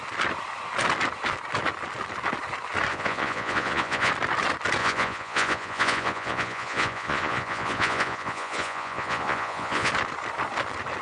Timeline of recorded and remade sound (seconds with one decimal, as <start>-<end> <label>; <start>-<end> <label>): 0.0-2.9 recorded; 2.9-4.1 remade; 4.1-4.8 recorded; 4.8-9.9 remade; 9.9-11.0 recorded